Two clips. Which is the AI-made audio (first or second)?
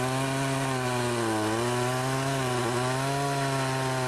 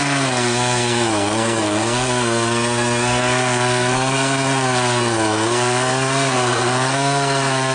second